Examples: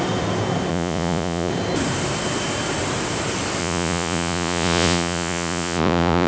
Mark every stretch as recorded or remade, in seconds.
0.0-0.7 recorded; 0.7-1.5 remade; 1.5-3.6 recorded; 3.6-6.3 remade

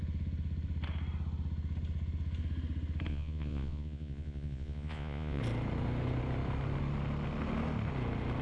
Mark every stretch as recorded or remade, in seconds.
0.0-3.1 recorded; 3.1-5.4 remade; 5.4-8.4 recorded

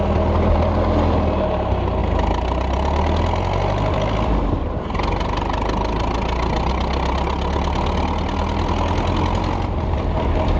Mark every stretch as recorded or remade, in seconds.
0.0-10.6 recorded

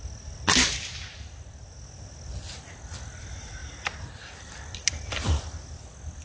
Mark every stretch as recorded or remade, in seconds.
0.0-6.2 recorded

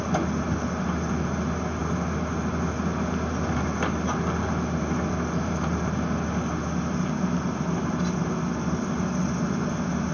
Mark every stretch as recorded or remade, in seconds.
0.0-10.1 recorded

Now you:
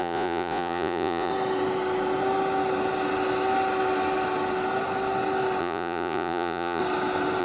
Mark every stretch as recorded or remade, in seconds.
0.0-1.3 remade; 1.3-5.6 recorded; 5.6-6.8 remade; 6.8-7.4 recorded

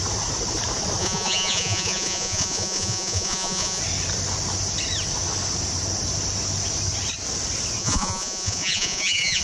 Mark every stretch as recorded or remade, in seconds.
0.0-1.0 recorded; 1.0-3.8 remade; 3.8-7.8 recorded; 7.8-9.4 remade

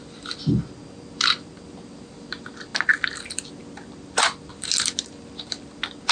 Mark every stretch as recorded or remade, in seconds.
0.0-6.1 recorded